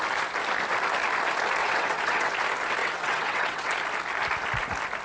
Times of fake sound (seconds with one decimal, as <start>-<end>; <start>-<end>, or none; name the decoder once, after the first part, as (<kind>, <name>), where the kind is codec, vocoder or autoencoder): 1.6-2.3 (vocoder, WaveNeXt); 2.8-3.7